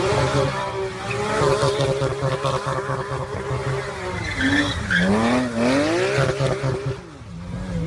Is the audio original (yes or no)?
yes